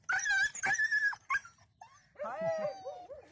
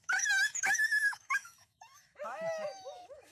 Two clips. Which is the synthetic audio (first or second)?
second